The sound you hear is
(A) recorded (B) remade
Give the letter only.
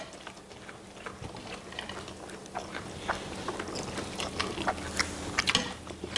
A